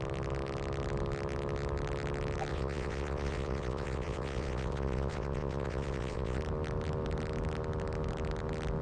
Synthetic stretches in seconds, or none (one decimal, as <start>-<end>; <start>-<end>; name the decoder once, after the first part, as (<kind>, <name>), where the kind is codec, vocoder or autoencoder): 2.5-6.4 (vocoder, WaveNeXt)